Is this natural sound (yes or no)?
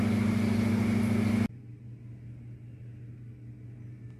yes